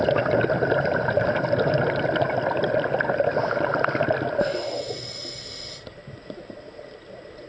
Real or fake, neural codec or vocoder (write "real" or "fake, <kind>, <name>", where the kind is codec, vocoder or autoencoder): real